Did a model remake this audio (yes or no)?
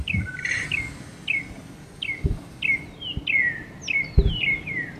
no